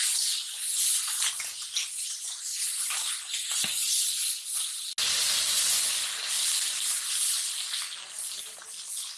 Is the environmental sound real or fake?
real